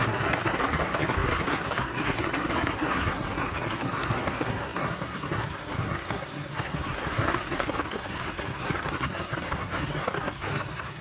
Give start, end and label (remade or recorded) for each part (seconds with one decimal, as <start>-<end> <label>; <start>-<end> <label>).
0.0-11.0 remade